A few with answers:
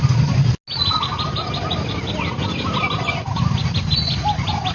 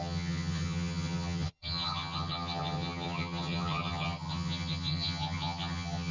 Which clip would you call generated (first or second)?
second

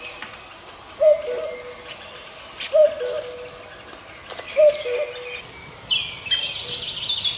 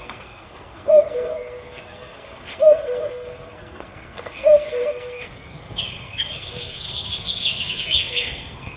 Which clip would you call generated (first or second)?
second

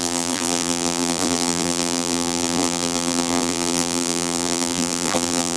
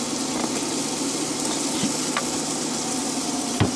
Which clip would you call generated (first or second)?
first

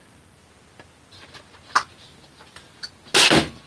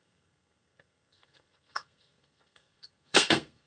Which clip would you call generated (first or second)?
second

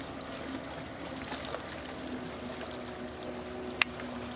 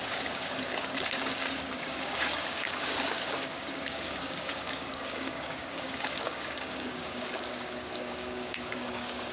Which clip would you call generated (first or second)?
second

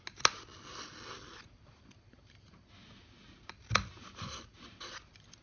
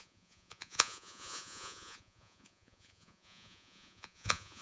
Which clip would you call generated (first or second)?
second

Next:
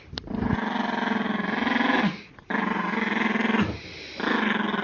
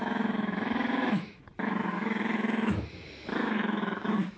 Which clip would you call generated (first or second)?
second